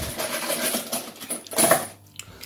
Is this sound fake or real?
real